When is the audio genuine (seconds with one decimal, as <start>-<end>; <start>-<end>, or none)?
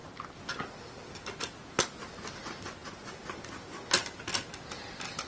0.0-5.3